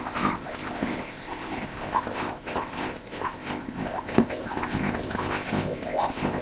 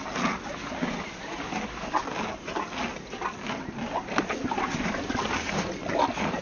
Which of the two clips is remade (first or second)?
first